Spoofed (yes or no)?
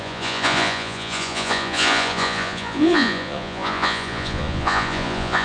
yes